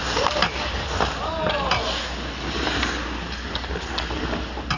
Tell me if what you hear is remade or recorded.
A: recorded